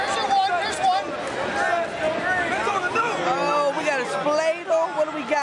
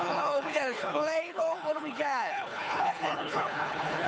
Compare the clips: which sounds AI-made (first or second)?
second